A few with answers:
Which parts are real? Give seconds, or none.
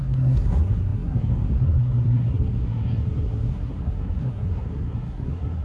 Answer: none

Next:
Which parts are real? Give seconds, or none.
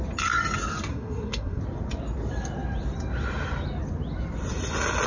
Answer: 0.0-0.9; 1.6-5.1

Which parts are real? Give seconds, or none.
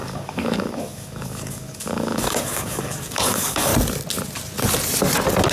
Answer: 3.7-5.5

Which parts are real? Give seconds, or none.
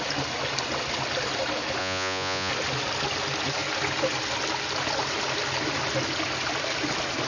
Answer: 0.0-1.8; 2.5-7.3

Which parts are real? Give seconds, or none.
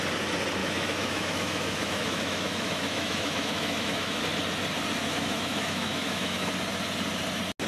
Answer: 0.0-0.6; 4.2-5.0; 6.5-7.7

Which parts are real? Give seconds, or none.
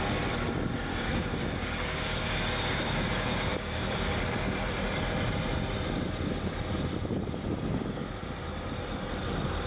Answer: 0.0-0.9; 4.2-9.7